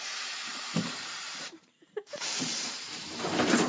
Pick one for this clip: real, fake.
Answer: fake